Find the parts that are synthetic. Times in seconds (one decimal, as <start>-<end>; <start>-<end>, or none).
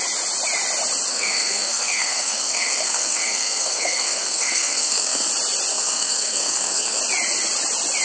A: 1.1-5.3; 5.7-7.0